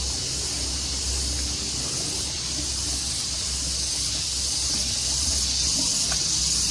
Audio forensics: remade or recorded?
recorded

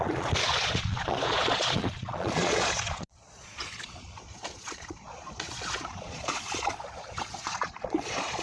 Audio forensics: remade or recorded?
remade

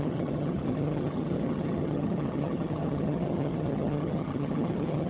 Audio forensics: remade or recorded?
remade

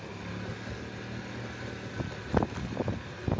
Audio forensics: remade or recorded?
recorded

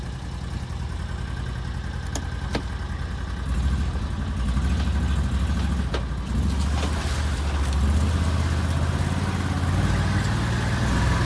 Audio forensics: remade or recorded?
recorded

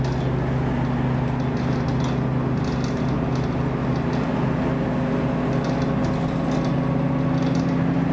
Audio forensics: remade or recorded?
recorded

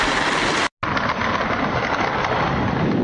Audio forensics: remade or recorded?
recorded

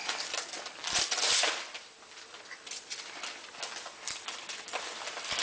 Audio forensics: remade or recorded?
remade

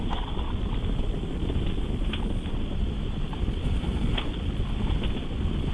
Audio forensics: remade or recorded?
recorded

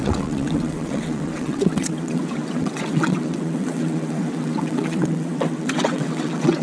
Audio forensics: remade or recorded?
remade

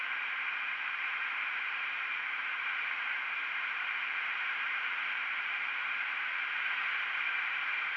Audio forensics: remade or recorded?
remade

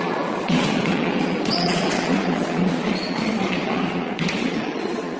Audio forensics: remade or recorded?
remade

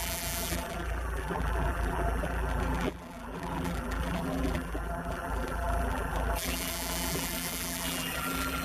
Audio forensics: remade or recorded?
remade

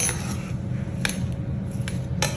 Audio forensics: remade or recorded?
recorded